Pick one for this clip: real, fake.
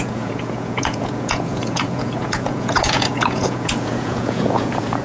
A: fake